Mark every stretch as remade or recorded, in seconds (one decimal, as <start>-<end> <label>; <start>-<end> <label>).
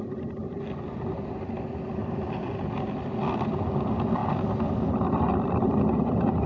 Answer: 0.0-6.5 recorded